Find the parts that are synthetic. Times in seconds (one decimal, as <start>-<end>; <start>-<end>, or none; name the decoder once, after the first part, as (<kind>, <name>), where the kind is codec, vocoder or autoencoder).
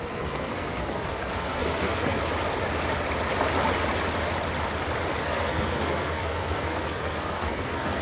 0.0-2.2 (codec, SNAC); 5.2-8.0